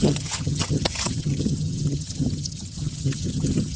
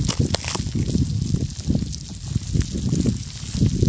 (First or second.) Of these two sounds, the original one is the second